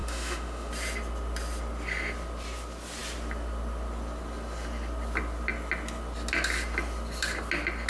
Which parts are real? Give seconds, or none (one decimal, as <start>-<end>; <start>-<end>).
0.7-7.9